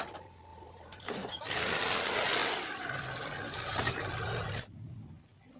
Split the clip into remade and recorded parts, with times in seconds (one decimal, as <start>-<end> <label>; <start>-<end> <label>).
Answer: 0.0-0.5 recorded; 0.5-1.5 remade; 1.5-3.7 recorded; 3.7-4.5 remade; 4.5-5.6 recorded